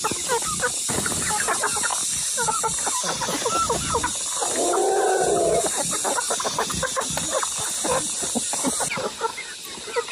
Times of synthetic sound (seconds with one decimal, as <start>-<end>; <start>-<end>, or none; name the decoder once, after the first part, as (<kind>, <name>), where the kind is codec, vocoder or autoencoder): none